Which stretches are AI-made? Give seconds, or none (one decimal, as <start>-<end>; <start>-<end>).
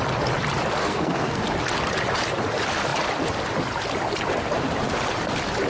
0.8-1.4